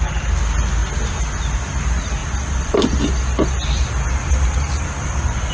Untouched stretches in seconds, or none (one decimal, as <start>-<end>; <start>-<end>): 0.0-5.5